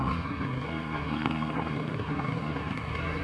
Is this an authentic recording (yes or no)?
no